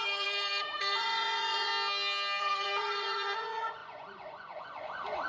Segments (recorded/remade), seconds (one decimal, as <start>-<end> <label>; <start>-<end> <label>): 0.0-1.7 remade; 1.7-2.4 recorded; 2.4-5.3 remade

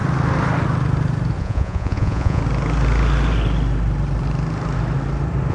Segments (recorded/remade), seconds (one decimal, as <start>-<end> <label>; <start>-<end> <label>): 0.0-1.4 recorded; 1.4-2.4 remade; 2.4-5.5 recorded

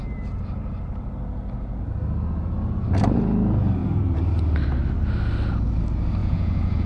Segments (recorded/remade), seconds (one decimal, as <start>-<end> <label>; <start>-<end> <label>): 0.0-6.2 recorded; 6.2-6.9 remade

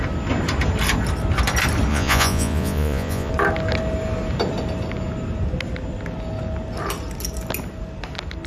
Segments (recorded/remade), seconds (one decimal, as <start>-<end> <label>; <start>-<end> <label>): 0.0-1.9 recorded; 1.9-3.3 remade; 3.3-8.5 recorded

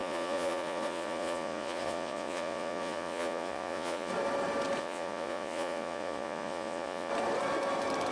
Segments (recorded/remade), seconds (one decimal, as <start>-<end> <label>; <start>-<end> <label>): 0.0-4.1 remade; 4.1-4.8 recorded; 4.8-7.1 remade; 7.1-8.1 recorded

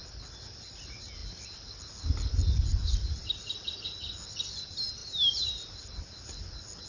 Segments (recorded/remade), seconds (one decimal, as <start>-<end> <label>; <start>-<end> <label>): 0.0-6.9 recorded